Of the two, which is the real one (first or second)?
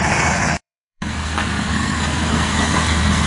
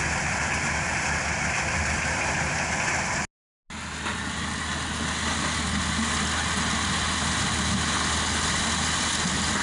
second